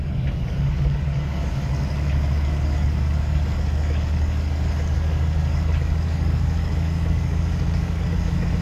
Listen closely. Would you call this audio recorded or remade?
remade